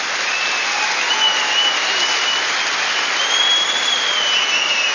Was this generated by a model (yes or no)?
no